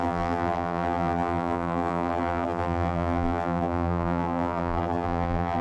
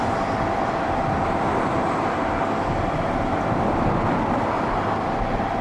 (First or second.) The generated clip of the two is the first